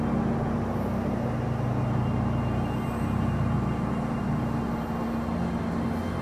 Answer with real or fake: real